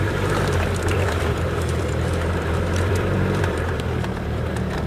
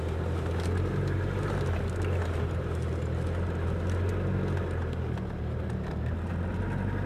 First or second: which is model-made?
first